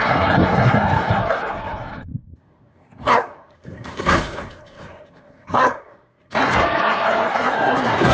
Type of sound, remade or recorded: remade